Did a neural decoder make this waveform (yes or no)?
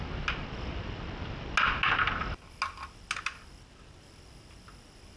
no